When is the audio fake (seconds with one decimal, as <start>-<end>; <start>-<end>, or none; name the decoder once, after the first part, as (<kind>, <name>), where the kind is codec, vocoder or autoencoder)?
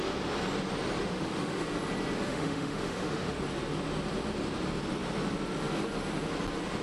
1.0-1.6 (autoencoder, DAC-VAE); 2.3-3.4